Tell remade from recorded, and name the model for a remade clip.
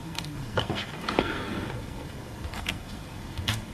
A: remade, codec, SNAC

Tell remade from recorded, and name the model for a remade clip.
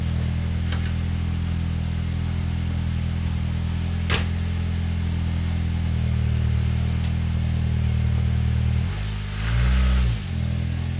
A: recorded